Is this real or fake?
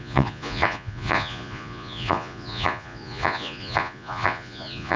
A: fake